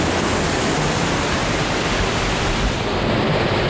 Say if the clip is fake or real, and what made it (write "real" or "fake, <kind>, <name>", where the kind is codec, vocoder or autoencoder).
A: real